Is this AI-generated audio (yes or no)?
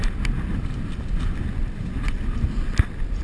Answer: no